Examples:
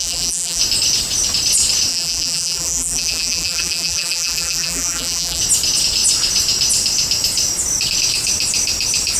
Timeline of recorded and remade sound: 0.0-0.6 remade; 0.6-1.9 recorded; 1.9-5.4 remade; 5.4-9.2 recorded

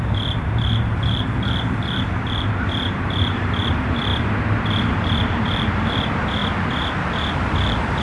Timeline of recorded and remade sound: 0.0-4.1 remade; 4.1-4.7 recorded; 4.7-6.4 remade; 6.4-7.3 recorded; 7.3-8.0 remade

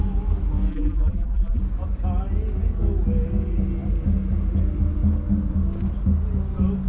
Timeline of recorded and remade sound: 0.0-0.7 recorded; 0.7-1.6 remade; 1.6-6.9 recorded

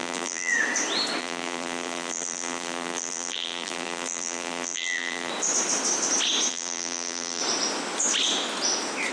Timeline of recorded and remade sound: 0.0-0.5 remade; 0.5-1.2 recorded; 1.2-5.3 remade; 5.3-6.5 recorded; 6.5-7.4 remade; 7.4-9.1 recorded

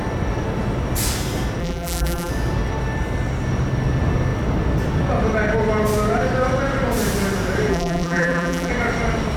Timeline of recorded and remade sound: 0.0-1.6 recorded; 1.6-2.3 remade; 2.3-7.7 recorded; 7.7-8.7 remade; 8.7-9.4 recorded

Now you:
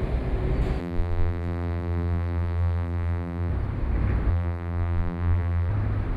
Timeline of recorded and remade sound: 0.0-0.8 recorded; 0.8-3.5 remade; 3.5-4.3 recorded; 4.3-5.7 remade; 5.7-6.2 recorded